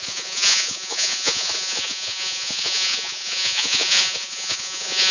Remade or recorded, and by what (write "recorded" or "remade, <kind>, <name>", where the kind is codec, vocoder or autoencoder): remade, vocoder, Vocos